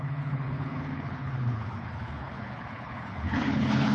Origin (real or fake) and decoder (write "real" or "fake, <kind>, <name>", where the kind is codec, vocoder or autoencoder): fake, codec, HILCodec